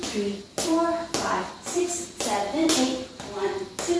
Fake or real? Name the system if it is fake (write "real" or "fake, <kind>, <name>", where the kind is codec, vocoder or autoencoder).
real